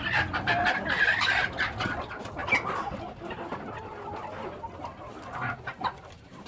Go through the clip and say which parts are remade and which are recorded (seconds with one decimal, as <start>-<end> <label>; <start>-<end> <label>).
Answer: 0.0-6.5 recorded